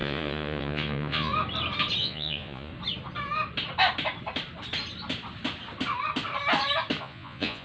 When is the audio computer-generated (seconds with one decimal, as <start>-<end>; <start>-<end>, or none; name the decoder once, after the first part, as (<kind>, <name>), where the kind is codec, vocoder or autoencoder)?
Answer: 0.0-1.3 (vocoder, Vocos); 2.0-2.7; 7.0-7.6